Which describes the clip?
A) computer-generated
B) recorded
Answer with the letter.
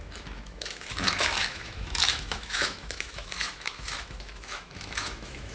A